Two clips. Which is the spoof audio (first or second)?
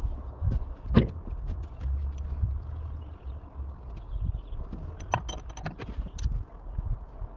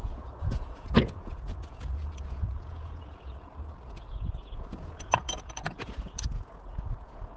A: second